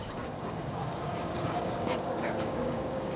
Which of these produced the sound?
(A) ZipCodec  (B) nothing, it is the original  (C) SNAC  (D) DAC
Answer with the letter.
D